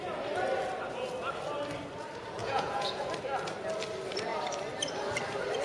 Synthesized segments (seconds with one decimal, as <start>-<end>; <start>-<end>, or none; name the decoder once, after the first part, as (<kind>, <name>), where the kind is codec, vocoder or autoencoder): 2.4-3.1 (vocoder, Vocos)